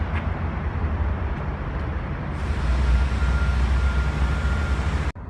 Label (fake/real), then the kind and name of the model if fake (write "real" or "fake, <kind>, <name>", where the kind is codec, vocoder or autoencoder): real